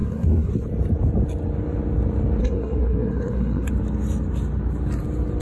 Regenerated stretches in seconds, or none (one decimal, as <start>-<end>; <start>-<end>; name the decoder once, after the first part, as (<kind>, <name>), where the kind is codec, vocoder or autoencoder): 0.0-0.5 (codec, SNAC); 2.4-3.7